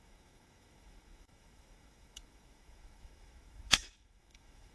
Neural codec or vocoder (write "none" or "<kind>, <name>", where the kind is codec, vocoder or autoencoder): autoencoder, DAC-VAE